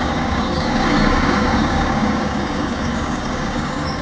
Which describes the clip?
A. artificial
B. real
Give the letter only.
A